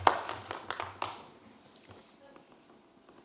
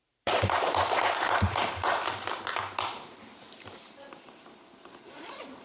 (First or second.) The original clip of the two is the first